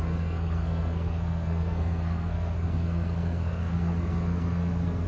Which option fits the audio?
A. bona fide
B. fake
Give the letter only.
B